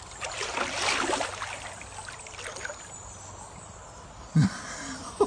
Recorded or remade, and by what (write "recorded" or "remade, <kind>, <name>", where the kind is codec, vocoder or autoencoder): recorded